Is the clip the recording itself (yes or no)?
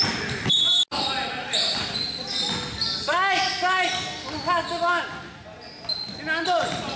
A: yes